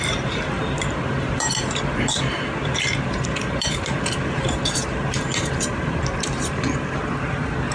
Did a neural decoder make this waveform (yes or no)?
yes